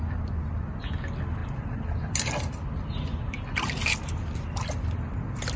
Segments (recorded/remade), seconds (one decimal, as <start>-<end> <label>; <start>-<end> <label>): 0.0-5.6 recorded